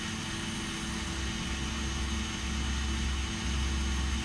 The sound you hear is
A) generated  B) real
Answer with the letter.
B